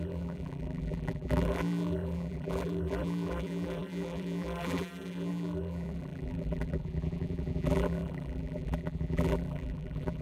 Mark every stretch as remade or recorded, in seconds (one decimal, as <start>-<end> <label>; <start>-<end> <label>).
0.0-10.2 remade